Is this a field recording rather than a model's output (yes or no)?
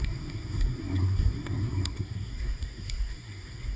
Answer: no